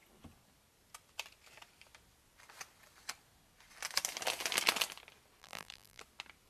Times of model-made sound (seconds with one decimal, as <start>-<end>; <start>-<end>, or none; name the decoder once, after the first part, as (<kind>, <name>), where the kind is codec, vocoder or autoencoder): 5.4-6.0 (vocoder, BigVGAN v2)

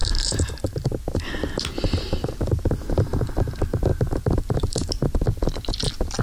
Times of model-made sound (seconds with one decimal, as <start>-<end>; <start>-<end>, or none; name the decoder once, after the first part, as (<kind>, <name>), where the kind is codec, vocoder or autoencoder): 0.0-2.4 (vocoder, BigVGAN v2); 3.9-5.2

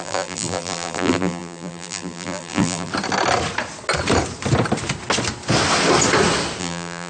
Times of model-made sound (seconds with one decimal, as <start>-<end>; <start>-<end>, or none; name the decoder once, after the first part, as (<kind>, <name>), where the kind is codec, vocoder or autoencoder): 0.0-2.9 (vocoder, BigVGAN v2); 6.6-7.1